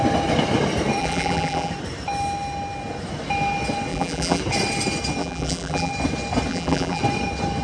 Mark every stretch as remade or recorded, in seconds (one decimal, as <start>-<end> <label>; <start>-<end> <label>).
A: 0.0-1.0 recorded; 1.0-1.7 remade; 1.7-3.9 recorded; 3.9-4.4 remade; 4.4-5.2 recorded; 5.2-5.9 remade; 5.9-6.5 recorded; 6.5-7.0 remade; 7.0-7.6 recorded